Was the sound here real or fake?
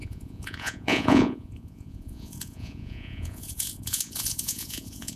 fake